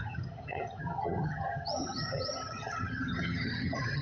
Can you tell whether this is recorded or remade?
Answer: remade